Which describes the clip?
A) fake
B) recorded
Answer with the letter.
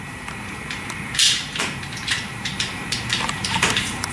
A